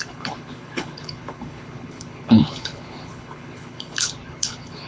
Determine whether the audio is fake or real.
fake